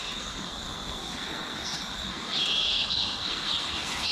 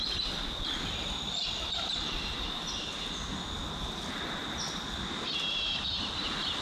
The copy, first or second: first